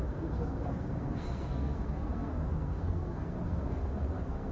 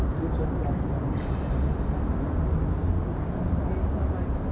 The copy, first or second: first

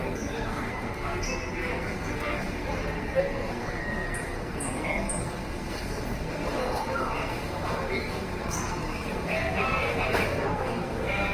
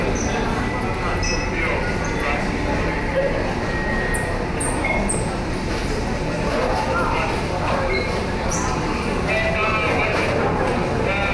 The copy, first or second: first